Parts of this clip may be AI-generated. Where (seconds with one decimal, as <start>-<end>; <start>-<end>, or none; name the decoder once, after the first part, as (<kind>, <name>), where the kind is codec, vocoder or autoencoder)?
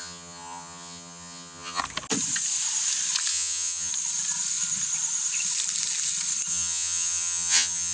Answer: 0.0-1.8 (vocoder, HiFi-GAN); 3.3-3.9; 6.5-7.9